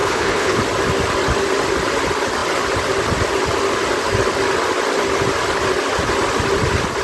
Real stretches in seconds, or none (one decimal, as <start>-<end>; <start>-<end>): 0.6-7.0